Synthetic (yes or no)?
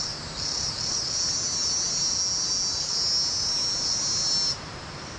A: no